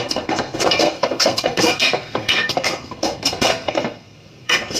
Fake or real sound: fake